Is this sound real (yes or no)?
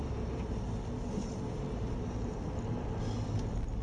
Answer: yes